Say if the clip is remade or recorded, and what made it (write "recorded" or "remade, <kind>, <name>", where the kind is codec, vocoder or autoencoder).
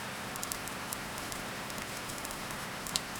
remade, autoencoder, DAC-VAE